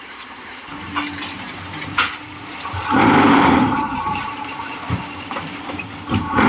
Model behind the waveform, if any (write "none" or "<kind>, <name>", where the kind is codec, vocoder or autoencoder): vocoder, BigVGAN v2